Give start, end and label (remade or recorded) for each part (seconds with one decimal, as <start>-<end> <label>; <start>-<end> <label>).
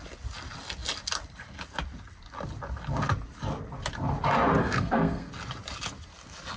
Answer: 0.0-4.6 recorded; 4.6-5.3 remade; 5.3-6.6 recorded